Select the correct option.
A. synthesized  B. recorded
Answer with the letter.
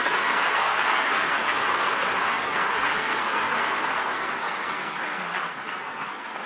A